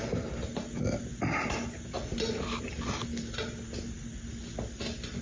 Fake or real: real